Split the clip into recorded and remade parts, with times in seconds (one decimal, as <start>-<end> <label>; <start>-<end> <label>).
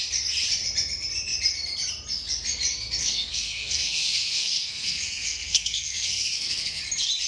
0.0-3.0 recorded; 3.0-6.8 remade; 6.8-7.3 recorded